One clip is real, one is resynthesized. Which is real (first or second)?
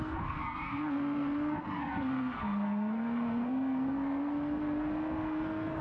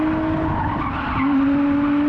second